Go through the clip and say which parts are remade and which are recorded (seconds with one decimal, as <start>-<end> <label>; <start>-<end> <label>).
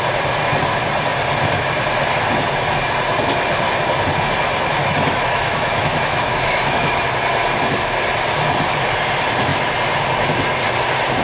0.0-4.8 recorded; 4.8-7.0 remade; 7.0-11.2 recorded